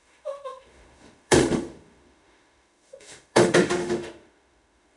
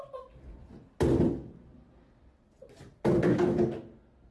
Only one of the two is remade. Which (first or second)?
first